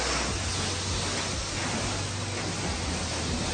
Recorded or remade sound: recorded